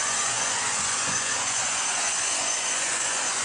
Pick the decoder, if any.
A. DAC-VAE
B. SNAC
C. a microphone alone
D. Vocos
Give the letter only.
D